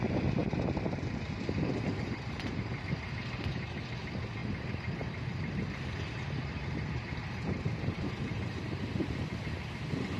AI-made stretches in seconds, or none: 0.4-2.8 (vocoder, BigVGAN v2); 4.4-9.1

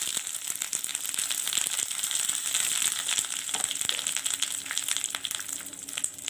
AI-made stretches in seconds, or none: none

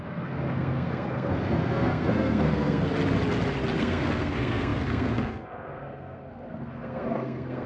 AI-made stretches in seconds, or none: 0.0-2.9 (codec, SNAC); 3.8-7.7

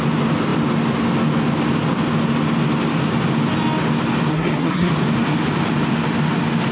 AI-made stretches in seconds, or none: 4.3-4.9 (codec, SNAC)

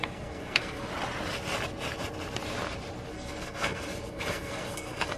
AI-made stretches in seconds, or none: 0.0-0.9 (codec, SNAC); 3.1-5.2

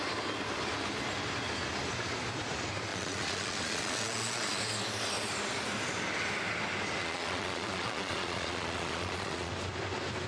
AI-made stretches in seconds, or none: 2.9-4.6 (vocoder, Vocos); 7.0-9.5

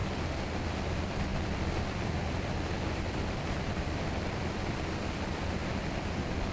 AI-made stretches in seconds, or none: 0.8-5.6 (vocoder, BigVGAN v2); 6.1-6.5